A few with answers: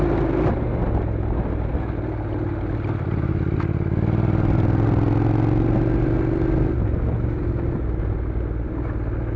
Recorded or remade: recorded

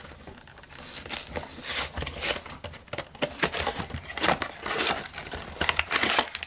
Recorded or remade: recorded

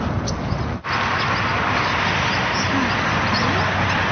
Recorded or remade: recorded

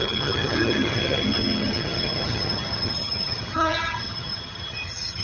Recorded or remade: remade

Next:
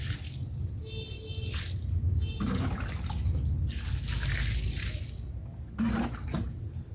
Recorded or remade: recorded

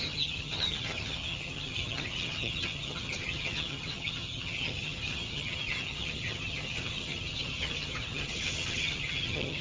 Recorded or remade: remade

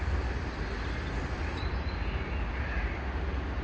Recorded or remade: recorded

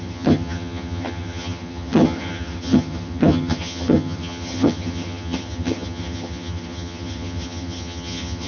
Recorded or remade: remade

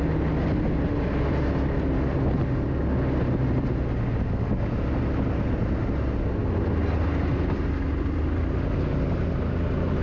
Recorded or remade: recorded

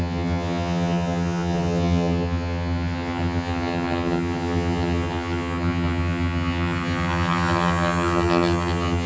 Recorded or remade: remade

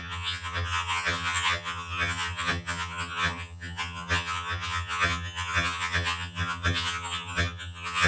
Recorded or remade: remade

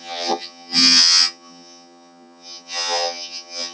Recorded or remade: remade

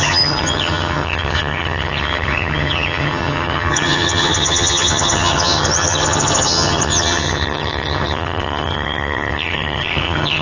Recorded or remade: remade